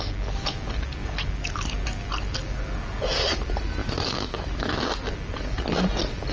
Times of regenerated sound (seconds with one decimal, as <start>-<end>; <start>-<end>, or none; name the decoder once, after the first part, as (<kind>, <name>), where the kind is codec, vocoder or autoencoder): 3.8-4.7 (autoencoder, DAC-VAE)